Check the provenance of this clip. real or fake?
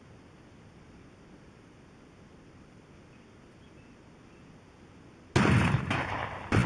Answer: real